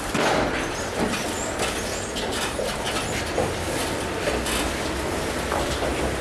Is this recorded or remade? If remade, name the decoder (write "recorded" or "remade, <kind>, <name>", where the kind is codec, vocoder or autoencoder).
recorded